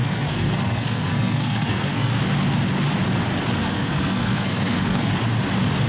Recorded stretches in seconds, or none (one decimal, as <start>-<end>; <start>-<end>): 2.1-3.6; 5.1-5.9